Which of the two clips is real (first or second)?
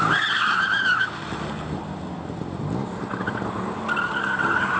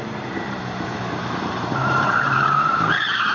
first